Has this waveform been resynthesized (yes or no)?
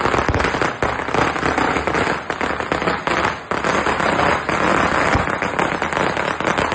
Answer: no